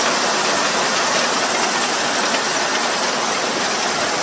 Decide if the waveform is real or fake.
real